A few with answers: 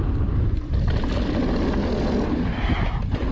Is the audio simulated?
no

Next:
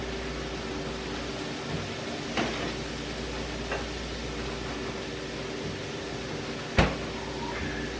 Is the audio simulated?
no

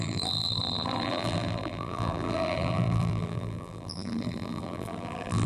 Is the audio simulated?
yes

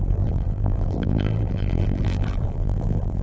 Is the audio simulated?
yes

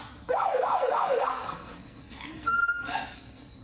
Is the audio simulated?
yes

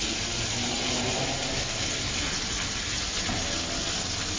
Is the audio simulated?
no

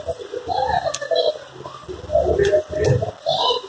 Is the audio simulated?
no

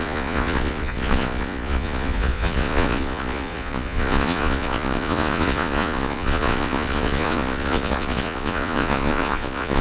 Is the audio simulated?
yes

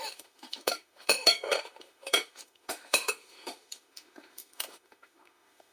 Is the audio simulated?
yes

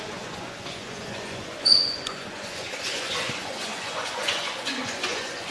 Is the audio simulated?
yes